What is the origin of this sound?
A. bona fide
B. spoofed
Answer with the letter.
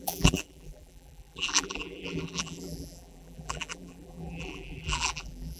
B